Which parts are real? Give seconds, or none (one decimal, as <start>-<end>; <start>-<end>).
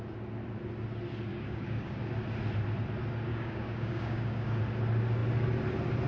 0.0-1.3; 2.0-3.3; 4.6-6.1